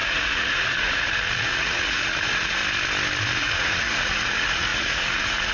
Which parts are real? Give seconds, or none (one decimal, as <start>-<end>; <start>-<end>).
2.6-3.4